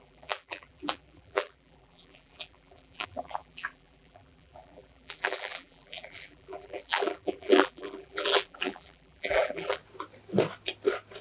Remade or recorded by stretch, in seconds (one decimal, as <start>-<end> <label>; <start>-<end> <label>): 0.0-9.8 remade; 9.8-11.2 recorded